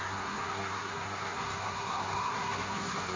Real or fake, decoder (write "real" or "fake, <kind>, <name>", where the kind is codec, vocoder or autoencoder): fake, codec, SNAC